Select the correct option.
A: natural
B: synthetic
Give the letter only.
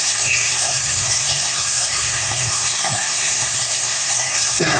B